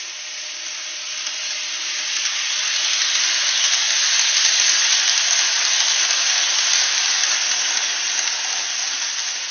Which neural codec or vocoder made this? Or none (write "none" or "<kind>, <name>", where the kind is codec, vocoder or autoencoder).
none